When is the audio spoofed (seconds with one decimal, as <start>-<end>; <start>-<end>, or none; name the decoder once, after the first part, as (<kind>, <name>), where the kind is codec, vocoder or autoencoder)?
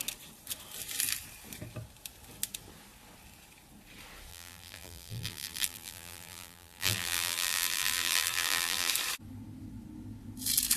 4.3-8.9 (vocoder, BigVGAN v2)